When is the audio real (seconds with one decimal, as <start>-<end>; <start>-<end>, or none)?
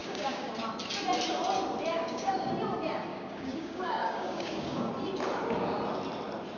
0.5-1.9; 2.5-3.1; 4.9-6.6